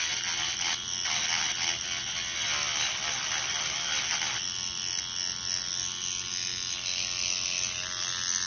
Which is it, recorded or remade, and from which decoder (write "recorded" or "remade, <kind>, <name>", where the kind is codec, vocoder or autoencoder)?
recorded